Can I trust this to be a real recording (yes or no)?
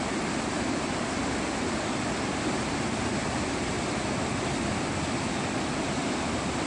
yes